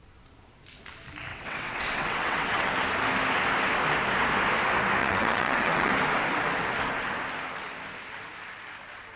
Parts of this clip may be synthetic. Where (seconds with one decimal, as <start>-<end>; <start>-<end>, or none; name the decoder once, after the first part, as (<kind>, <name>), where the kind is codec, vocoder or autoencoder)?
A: 1.3-2.7 (vocoder, WaveNeXt); 5.0-5.9

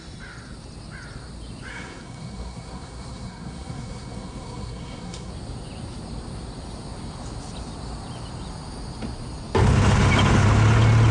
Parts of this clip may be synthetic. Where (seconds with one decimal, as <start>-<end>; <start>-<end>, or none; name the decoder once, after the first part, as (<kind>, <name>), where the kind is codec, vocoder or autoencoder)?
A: 1.7-5.3 (codec, SNAC)

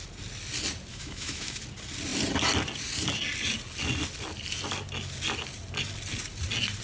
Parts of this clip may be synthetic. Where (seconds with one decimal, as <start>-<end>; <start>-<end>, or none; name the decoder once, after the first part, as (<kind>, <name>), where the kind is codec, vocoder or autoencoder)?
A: 0.9-1.6 (autoencoder, DAC-VAE)

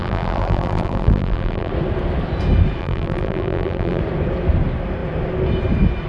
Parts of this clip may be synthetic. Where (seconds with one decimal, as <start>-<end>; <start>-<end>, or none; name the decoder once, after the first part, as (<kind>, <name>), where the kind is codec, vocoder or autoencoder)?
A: 0.0-1.7 (vocoder, BigVGAN v2); 2.8-4.0